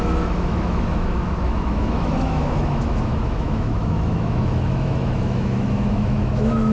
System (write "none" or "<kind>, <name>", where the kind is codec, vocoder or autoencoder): autoencoder, DAC-VAE